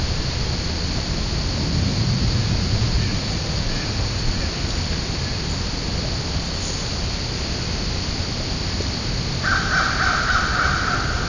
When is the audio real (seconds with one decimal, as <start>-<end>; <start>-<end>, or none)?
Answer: 0.0-1.9; 4.4-11.3